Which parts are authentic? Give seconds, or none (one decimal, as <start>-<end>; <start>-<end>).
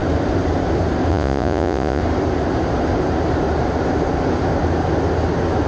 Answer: 0.0-1.1; 2.0-5.7